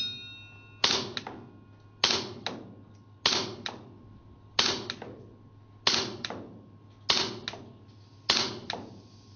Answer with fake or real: real